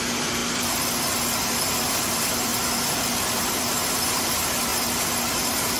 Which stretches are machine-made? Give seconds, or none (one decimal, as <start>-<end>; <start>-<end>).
0.0-0.4; 1.6-2.5; 3.4-4.7; 5.3-5.8